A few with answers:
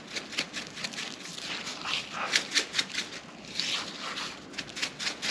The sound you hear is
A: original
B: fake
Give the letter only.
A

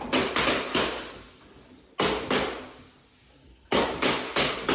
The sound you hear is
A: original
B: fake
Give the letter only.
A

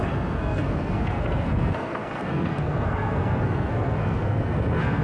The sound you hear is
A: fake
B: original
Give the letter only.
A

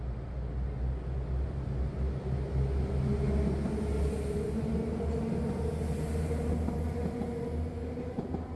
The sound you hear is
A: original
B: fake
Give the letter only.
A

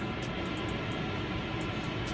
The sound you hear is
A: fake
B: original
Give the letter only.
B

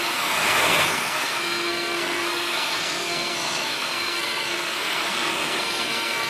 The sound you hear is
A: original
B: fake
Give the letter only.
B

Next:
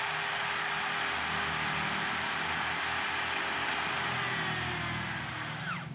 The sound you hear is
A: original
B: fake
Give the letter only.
A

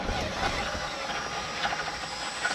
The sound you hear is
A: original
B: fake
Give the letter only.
A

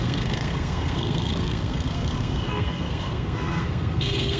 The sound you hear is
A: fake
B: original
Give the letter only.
A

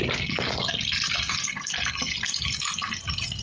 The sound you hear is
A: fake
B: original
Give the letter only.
B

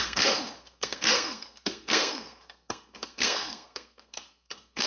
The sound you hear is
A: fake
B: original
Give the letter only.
A